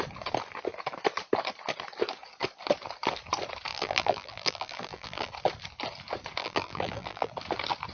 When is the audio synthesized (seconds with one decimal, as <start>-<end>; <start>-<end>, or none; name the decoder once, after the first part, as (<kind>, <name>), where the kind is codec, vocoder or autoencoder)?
3.7-5.3 (vocoder, BigVGAN v2); 6.4-7.3